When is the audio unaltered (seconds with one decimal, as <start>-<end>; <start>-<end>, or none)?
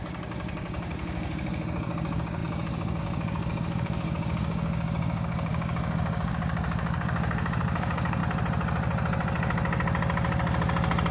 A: 8.2-11.1